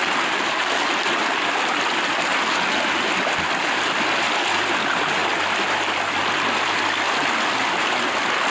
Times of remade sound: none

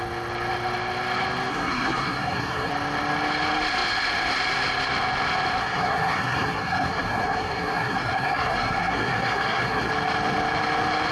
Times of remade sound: 1.5-2.7 (codec, SNAC); 5.6-9.9

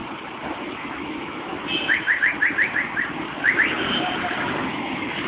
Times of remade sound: 0.7-1.5 (autoencoder, DAC-VAE); 4.7-5.3

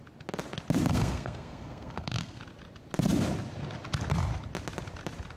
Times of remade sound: 0.9-2.4 (codec, SNAC)

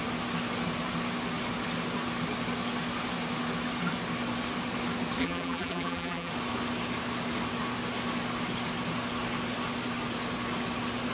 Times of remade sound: 5.2-6.3 (vocoder, BigVGAN v2)

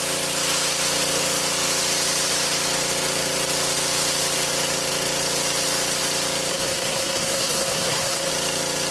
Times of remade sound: 6.5-8.3 (codec, SNAC)

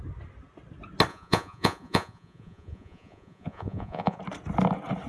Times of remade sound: 1.1-4.2 (vocoder, Vocos)

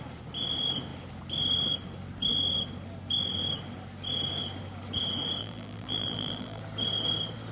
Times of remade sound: 5.4-6.6 (vocoder, BigVGAN v2)